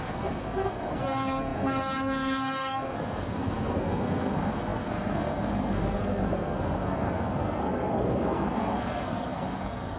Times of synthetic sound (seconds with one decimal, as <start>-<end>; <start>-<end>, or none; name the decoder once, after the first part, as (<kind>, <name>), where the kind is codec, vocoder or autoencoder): 0.0-10.0 (codec, SNAC)